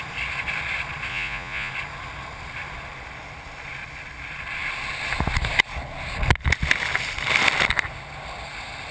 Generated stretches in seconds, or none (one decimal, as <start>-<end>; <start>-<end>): 1.1-1.7